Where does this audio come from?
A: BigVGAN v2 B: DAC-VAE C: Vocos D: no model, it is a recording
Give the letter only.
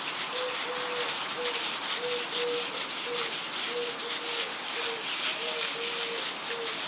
D